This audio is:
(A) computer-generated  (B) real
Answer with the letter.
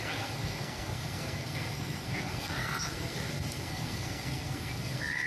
A